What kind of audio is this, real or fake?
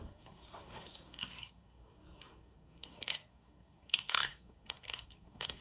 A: fake